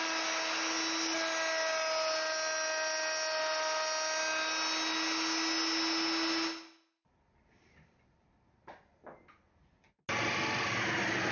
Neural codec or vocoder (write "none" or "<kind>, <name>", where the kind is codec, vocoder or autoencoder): none